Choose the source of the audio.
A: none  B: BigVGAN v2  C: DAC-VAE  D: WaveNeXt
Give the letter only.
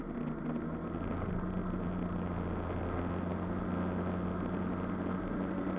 A